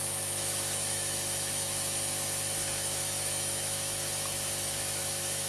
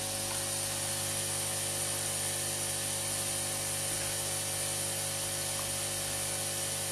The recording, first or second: second